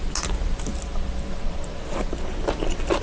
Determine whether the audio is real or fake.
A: real